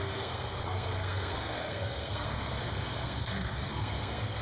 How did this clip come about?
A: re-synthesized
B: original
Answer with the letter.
A